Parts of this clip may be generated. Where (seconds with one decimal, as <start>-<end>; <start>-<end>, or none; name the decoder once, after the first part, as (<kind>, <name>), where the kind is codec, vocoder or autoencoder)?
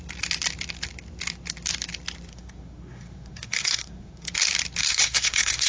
2.3-4.3 (codec, SNAC); 4.8-5.7